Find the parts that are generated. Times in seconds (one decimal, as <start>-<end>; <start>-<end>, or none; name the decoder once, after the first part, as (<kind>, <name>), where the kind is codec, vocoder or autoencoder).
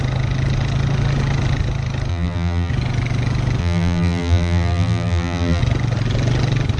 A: 2.1-2.7 (vocoder, BigVGAN v2); 3.6-5.6